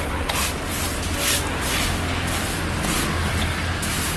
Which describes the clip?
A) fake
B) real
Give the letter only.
B